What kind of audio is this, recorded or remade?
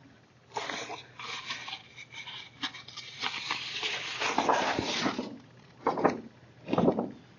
recorded